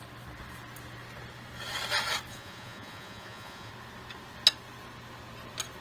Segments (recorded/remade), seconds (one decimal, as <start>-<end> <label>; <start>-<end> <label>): 0.0-2.3 recorded; 2.3-3.7 remade; 3.7-5.8 recorded